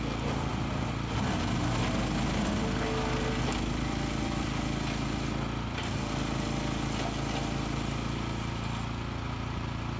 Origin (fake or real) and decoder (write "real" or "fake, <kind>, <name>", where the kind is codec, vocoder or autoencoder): real